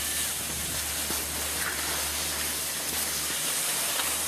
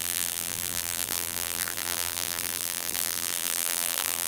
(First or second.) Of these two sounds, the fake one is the second